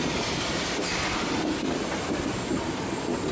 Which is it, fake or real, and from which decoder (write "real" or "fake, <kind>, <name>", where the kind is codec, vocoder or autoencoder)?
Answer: real